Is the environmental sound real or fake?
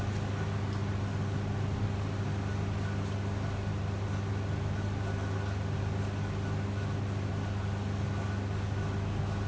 real